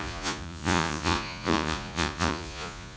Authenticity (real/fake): fake